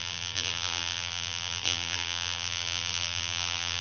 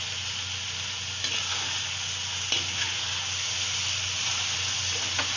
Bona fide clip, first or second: second